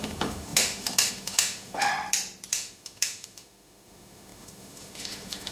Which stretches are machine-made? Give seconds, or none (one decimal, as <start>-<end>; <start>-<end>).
0.0-1.9; 2.5-5.5